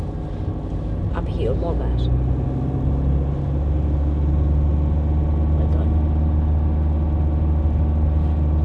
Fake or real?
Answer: real